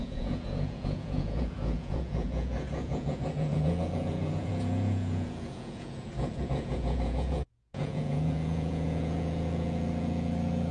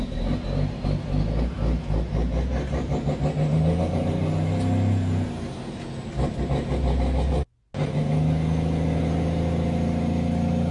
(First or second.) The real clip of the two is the second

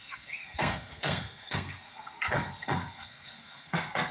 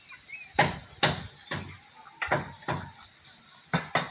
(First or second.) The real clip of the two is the second